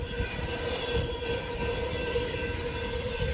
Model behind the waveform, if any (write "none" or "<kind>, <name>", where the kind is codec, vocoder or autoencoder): vocoder, BigVGAN v2